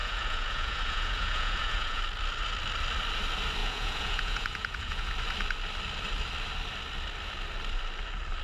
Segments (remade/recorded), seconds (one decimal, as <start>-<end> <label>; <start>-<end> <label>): 0.0-2.0 remade; 2.0-3.6 recorded; 3.6-5.1 remade; 5.1-8.4 recorded